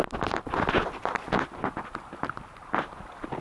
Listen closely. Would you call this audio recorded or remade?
recorded